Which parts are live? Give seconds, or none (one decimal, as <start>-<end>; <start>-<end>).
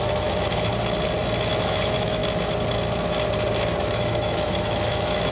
0.7-1.6; 2.2-3.8